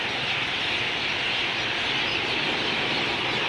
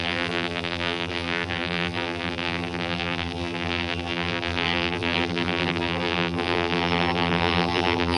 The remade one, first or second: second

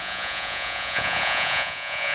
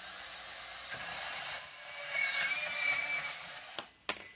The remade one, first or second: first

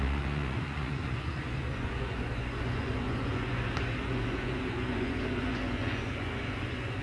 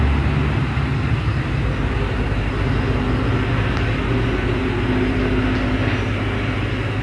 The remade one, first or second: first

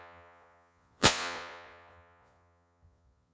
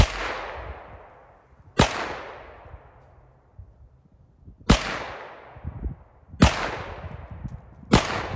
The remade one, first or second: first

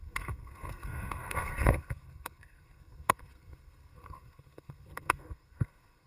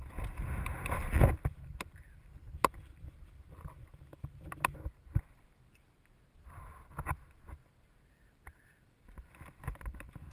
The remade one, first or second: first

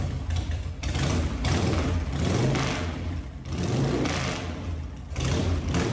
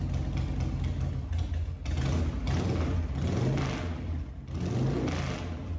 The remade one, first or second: first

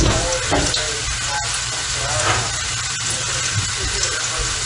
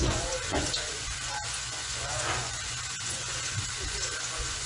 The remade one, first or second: second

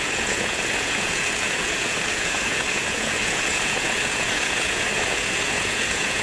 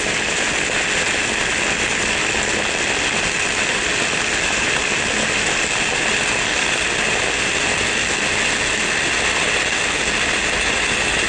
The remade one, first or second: first